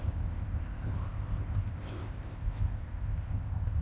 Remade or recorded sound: remade